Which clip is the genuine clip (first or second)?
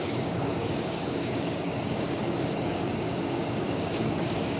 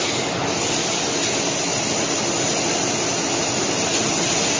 second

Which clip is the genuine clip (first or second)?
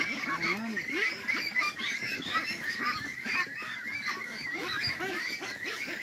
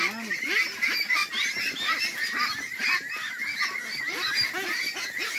second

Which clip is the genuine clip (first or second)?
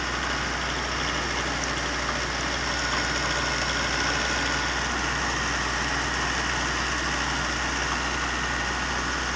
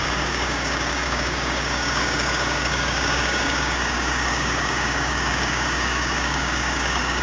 first